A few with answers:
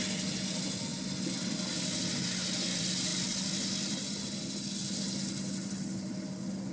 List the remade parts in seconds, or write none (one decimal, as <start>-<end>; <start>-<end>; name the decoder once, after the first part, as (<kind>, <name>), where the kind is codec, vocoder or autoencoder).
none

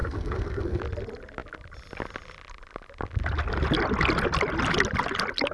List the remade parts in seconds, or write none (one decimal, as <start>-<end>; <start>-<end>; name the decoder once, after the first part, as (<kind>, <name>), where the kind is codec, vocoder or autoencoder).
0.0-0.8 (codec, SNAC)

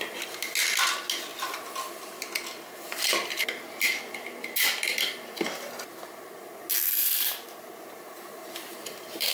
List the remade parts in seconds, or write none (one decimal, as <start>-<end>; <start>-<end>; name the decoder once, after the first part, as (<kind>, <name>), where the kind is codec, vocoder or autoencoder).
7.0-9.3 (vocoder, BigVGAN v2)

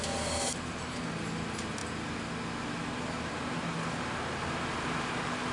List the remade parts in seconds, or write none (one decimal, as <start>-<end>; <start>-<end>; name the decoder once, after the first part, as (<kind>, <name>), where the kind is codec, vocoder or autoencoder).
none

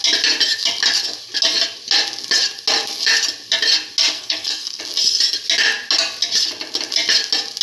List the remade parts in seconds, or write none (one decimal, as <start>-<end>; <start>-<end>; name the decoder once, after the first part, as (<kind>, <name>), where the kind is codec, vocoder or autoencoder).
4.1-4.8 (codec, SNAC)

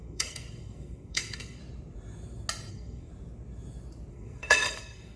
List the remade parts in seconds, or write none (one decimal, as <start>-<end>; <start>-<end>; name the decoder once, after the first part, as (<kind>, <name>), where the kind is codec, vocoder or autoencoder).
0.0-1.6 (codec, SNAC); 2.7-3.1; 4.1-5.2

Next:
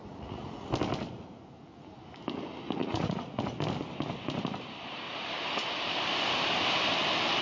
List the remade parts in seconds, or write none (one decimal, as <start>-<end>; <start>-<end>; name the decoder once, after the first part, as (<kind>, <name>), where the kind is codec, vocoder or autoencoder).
0.0-0.7 (vocoder, Vocos); 2.8-3.4

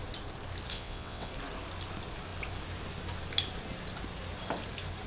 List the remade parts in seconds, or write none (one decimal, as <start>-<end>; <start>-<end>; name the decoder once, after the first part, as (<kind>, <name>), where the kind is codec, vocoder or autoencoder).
0.7-1.3 (vocoder, WaveNeXt)